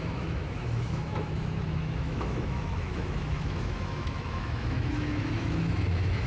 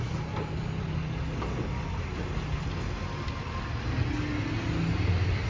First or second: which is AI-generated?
first